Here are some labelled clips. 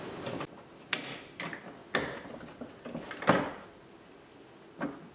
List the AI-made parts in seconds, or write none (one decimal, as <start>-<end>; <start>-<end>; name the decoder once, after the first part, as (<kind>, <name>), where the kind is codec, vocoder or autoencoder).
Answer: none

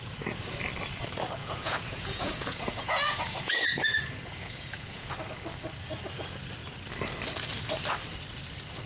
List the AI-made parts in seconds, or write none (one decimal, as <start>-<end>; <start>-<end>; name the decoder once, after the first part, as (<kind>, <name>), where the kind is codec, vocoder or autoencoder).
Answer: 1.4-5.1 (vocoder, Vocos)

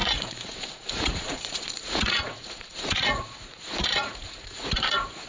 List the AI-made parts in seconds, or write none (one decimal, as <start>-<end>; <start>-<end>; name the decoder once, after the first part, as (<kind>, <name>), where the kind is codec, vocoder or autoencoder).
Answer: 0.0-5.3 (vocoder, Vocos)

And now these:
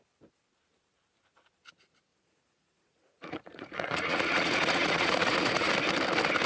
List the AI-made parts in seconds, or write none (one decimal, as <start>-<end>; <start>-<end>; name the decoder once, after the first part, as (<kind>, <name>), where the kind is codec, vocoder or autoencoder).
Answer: 2.1-5.7 (vocoder, Vocos)

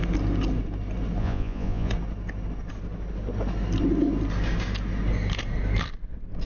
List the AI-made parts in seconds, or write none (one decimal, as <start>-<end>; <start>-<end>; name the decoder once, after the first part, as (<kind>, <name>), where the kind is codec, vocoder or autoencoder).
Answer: 1.2-1.9 (vocoder, Vocos)

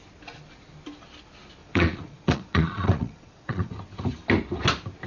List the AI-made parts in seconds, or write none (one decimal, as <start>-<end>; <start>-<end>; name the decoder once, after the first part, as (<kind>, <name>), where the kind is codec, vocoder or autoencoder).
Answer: 1.6-3.7 (vocoder, Vocos)